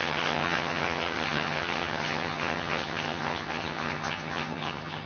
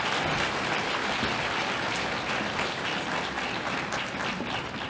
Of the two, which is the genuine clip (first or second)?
second